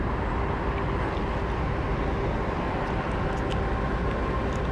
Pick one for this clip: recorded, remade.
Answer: recorded